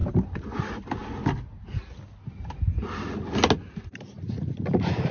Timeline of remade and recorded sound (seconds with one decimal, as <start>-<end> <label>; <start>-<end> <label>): 0.0-5.1 recorded